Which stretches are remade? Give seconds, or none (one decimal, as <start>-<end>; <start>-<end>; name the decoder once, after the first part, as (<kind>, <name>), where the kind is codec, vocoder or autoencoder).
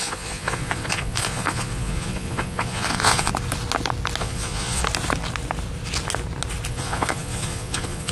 0.0-3.3 (vocoder, Vocos); 4.2-4.8; 6.7-8.1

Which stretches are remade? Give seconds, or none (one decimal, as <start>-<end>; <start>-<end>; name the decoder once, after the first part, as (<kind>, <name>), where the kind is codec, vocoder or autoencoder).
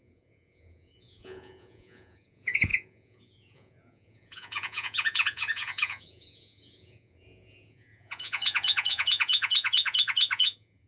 0.0-10.9 (vocoder, Vocos)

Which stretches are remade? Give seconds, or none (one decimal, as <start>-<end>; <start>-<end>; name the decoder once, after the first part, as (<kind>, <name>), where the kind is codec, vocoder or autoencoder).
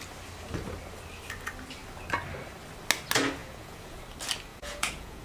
3.4-4.0 (vocoder, Vocos); 4.5-5.2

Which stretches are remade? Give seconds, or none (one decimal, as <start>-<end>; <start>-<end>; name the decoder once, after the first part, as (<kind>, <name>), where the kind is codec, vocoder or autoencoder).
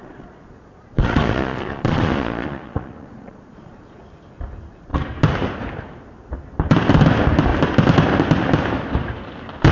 0.0-4.0 (vocoder, Vocos)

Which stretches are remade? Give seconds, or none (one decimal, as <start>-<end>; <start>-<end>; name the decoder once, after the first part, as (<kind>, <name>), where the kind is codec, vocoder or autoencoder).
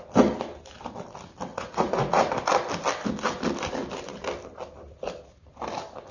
1.5-2.2 (vocoder, Vocos)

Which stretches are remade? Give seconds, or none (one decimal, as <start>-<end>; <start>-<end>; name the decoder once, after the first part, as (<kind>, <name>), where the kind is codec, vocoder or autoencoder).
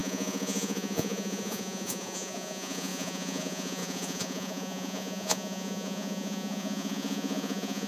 0.0-7.9 (vocoder, Vocos)